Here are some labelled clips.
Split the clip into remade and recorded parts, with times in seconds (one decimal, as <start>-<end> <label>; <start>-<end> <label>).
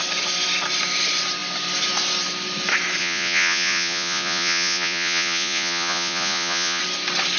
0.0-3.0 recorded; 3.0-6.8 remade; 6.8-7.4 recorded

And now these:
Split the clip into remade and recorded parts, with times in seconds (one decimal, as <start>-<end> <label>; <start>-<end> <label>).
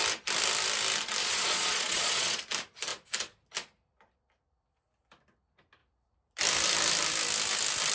0.0-1.2 recorded; 1.2-2.4 remade; 2.4-7.9 recorded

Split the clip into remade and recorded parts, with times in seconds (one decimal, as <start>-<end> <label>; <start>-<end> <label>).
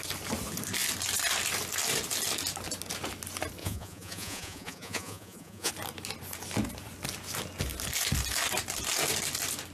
0.0-3.6 recorded; 3.6-5.7 remade; 5.7-9.7 recorded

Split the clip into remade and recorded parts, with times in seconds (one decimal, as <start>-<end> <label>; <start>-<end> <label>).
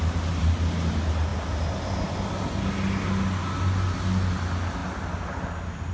0.0-5.9 recorded